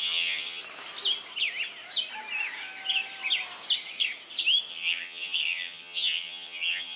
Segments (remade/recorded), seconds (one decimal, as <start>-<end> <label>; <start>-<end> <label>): 0.0-0.6 remade; 0.6-4.7 recorded; 4.7-7.0 remade